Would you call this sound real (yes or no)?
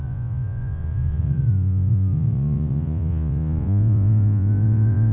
no